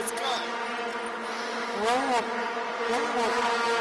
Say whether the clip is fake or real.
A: real